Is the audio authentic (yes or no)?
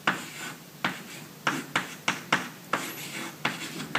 yes